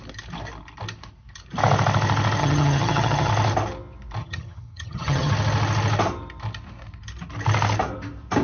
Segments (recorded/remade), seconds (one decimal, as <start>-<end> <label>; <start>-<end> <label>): 0.0-2.4 recorded; 2.4-3.3 remade; 3.3-4.2 recorded; 4.2-5.3 remade; 5.3-8.4 recorded